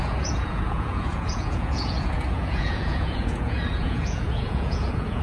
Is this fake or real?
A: fake